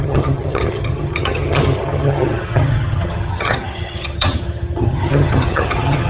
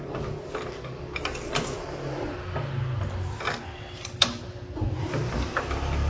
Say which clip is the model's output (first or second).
first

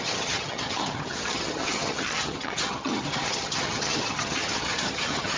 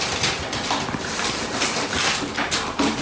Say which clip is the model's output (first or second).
first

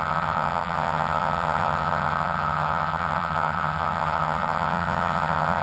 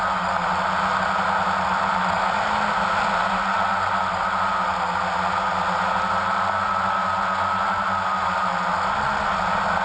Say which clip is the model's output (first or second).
first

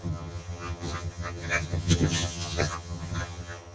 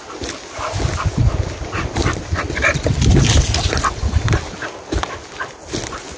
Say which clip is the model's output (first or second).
first